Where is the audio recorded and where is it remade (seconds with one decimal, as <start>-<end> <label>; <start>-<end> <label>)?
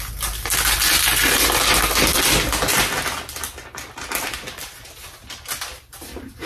0.0-6.5 recorded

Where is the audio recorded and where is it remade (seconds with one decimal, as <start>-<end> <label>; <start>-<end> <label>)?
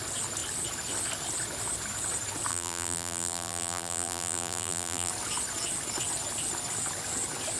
0.0-2.5 recorded; 2.5-5.1 remade; 5.1-7.6 recorded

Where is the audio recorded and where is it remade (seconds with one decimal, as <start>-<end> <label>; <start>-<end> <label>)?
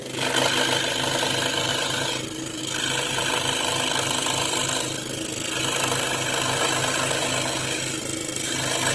0.0-1.7 recorded; 1.7-2.6 remade; 2.6-8.9 recorded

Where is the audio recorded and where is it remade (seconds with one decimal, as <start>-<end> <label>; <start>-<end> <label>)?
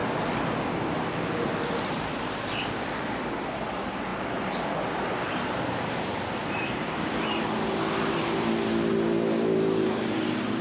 0.0-1.4 recorded; 1.4-10.6 remade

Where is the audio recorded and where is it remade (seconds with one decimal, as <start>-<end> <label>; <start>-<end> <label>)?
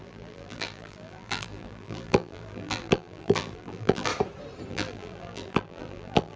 0.0-4.1 remade; 4.1-4.7 recorded; 4.7-6.4 remade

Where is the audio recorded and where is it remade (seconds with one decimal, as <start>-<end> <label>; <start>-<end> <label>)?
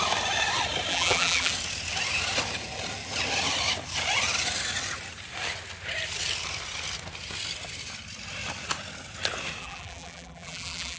0.0-0.9 recorded; 0.9-1.5 remade; 1.5-9.6 recorded; 9.6-11.0 remade